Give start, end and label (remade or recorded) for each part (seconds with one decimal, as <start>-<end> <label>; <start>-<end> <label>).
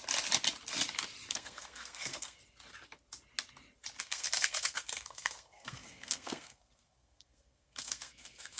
0.0-1.3 recorded; 1.3-2.4 remade; 2.4-4.0 recorded; 4.0-8.6 remade